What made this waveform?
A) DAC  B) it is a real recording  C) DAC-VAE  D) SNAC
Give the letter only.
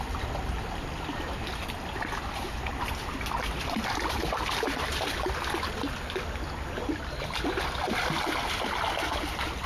B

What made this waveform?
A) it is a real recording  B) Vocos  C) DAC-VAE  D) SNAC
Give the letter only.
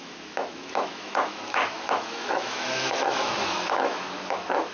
C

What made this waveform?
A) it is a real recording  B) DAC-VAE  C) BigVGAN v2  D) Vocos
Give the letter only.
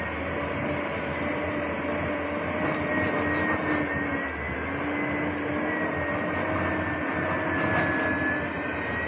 A